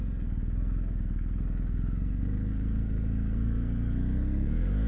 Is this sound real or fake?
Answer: fake